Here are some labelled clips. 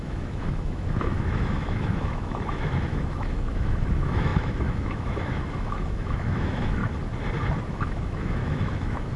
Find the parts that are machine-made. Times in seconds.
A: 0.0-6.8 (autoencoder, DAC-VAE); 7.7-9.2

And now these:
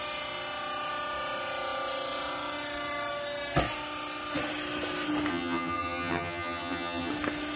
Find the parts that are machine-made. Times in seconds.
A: 5.3-7.1 (vocoder, HiFi-GAN)

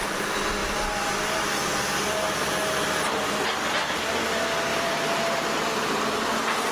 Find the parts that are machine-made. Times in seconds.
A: 0.6-1.1 (vocoder, BigVGAN v2); 4.7-5.2

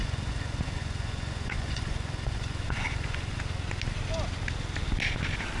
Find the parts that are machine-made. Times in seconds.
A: 0.0-3.4 (vocoder, Vocos)

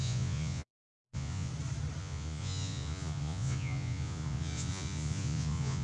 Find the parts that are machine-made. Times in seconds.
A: 0.0-1.5 (vocoder, Vocos); 2.0-5.8

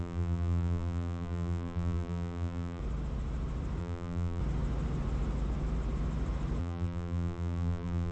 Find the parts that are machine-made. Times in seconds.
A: 0.0-2.8 (vocoder, BigVGAN v2); 3.8-4.4; 6.6-8.1